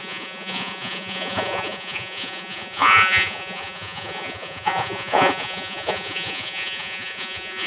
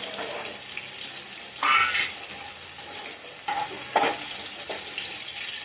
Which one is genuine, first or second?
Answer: second